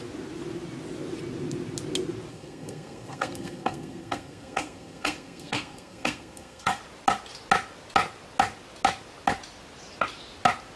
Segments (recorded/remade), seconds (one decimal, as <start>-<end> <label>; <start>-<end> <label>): 0.0-2.3 recorded; 2.3-6.8 remade; 6.8-10.8 recorded